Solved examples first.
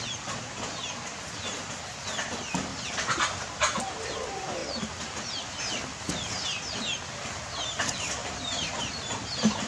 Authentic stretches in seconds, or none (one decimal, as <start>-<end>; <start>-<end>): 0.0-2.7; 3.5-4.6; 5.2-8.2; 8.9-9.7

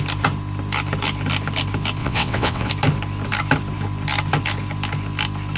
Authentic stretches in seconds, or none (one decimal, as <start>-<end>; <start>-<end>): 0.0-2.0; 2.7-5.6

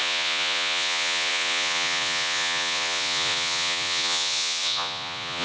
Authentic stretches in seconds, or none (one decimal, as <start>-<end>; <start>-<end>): none

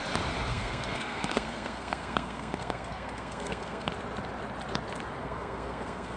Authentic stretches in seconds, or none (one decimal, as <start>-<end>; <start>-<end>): 0.0-0.5; 3.9-5.2

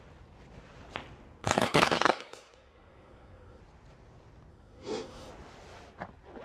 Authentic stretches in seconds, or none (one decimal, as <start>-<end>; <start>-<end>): 0.0-1.4; 3.6-4.5; 5.3-6.4

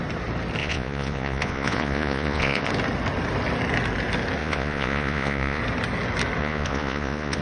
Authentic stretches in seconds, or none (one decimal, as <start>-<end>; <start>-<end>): 0.0-0.6; 2.7-4.4; 5.6-6.4

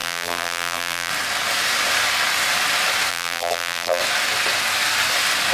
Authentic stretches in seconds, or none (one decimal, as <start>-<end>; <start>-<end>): 1.1-3.1; 4.0-5.5

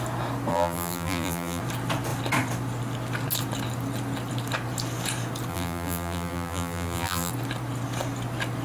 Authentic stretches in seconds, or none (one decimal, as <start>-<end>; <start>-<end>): 0.0-0.5; 1.6-5.5; 7.3-8.6